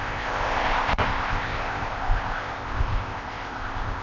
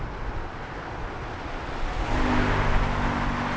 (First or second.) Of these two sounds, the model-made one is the first